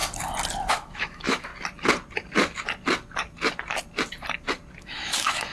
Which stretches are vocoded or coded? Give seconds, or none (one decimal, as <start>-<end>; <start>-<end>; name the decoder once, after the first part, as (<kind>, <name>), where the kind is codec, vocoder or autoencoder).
0.7-1.5 (autoencoder, DAC-VAE); 4.8-5.5